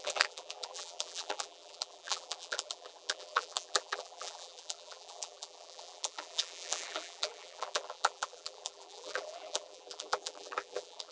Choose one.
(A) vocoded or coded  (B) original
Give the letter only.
A